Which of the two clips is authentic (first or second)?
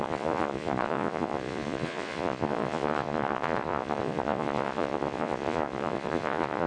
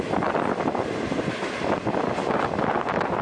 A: second